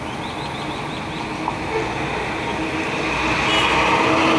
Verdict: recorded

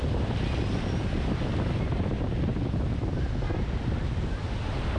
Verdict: recorded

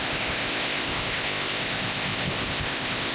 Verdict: remade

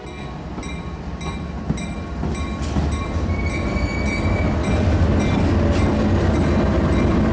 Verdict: recorded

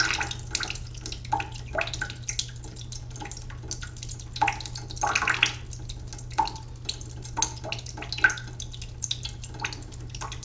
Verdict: recorded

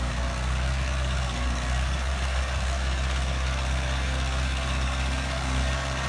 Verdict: remade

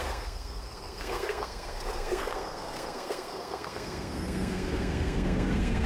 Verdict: remade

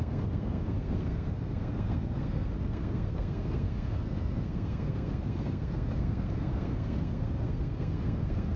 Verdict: remade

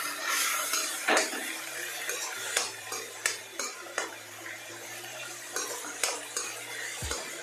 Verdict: remade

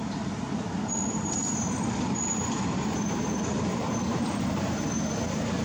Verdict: remade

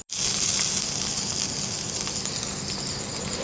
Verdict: recorded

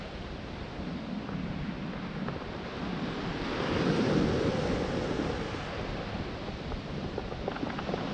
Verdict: recorded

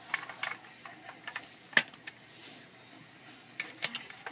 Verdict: recorded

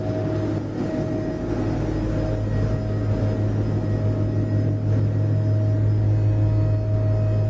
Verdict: recorded